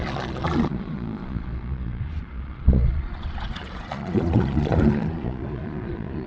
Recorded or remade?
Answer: remade